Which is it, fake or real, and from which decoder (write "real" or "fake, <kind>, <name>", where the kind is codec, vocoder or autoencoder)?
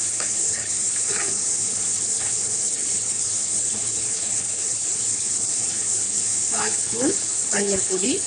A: fake, codec, HILCodec